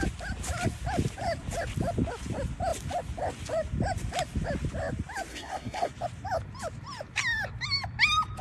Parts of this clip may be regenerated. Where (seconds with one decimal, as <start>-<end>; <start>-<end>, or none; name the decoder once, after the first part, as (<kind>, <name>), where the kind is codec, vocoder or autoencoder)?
5.3-5.9 (codec, SNAC)